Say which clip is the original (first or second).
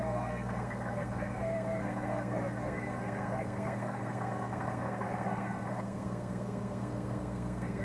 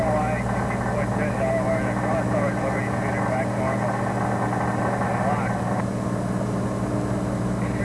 second